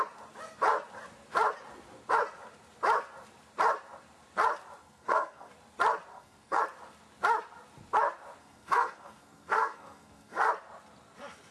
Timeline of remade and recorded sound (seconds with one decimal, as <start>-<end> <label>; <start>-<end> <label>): 0.0-4.8 recorded; 4.8-5.5 remade; 5.5-6.1 recorded; 6.1-6.6 remade; 6.6-8.4 recorded; 8.4-10.5 remade; 10.5-11.5 recorded